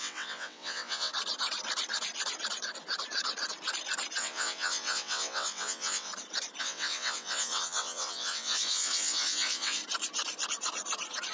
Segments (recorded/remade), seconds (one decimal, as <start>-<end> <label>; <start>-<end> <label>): 0.0-1.1 remade; 1.1-4.2 recorded; 4.2-6.1 remade; 6.1-6.6 recorded; 6.6-9.8 remade; 9.8-11.3 recorded